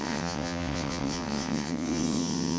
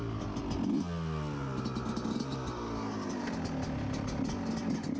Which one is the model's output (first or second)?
first